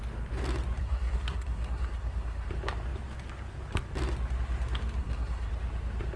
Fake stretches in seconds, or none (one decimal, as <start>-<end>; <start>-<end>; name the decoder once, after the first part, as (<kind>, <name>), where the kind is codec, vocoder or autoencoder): 0.8-2.5 (codec, SNAC); 5.0-5.5